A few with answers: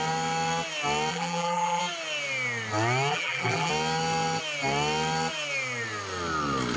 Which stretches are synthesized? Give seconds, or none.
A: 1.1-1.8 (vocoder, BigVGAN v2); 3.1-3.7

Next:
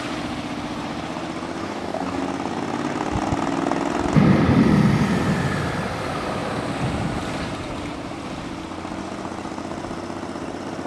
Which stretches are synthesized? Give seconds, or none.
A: 1.6-2.2 (codec, DAC)

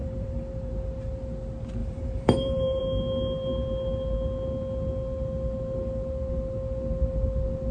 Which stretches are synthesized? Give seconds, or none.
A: 0.0-0.7 (vocoder, BigVGAN v2); 1.8-2.8